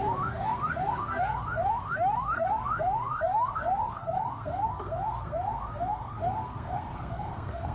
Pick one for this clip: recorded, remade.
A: remade